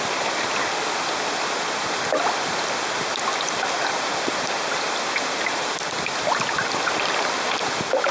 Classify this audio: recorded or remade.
remade